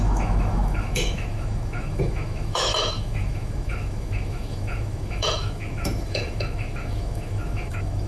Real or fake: fake